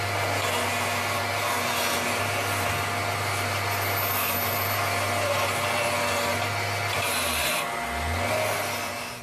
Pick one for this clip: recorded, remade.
recorded